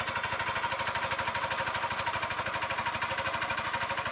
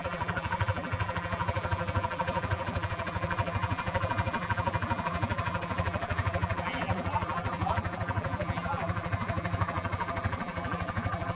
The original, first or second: first